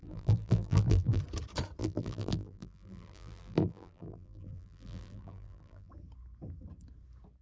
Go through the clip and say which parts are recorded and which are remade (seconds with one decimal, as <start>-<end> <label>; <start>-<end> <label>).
0.0-1.2 remade; 1.2-1.8 recorded; 1.8-5.9 remade; 5.9-7.4 recorded